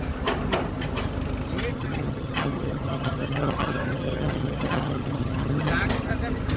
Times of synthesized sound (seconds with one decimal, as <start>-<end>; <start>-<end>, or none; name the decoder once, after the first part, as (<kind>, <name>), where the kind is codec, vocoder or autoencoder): 1.7-5.7 (vocoder, HiFi-GAN)